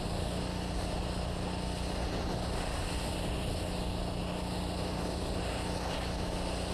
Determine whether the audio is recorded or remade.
recorded